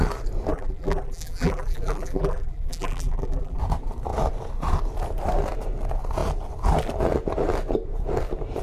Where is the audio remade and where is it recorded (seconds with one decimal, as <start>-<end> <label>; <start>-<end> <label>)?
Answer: 0.0-0.5 recorded; 0.5-3.6 remade; 3.6-8.6 recorded